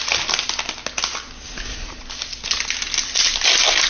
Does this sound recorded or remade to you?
recorded